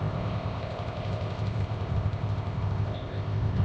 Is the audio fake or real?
fake